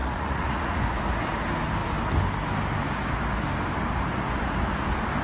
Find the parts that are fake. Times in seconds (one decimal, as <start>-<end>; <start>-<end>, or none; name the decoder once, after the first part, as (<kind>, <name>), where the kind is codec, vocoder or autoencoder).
0.0-0.8 (vocoder, Vocos)